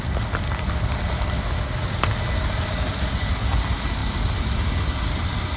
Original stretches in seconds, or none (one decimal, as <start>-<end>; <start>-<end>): 0.0-5.6